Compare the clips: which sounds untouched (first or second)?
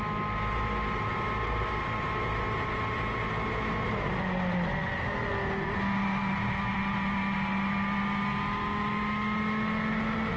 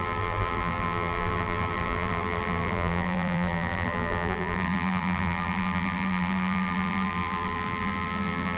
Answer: first